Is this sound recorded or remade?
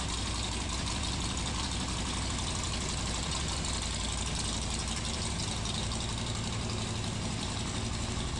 recorded